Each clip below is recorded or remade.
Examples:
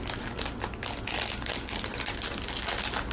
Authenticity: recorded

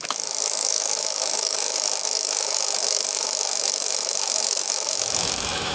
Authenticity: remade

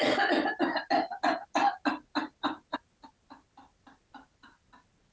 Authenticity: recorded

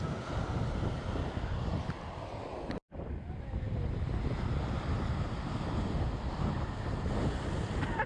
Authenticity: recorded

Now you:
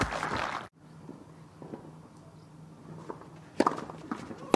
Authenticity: recorded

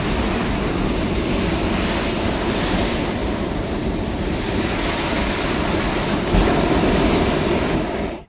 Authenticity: recorded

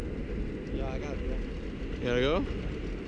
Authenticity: recorded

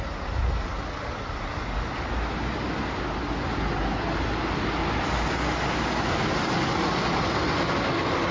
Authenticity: recorded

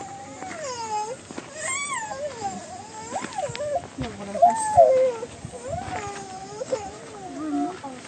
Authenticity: recorded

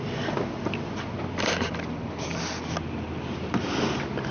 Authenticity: recorded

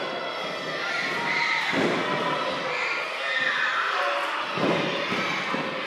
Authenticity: recorded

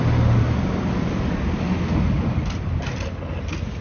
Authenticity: recorded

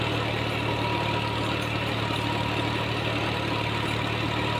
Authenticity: recorded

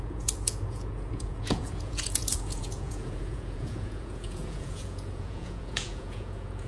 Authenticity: remade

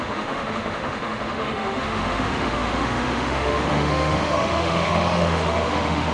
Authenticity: remade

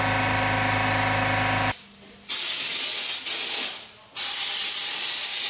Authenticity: recorded